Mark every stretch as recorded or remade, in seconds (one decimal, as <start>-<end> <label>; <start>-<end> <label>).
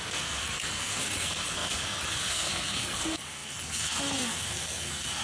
0.0-5.2 remade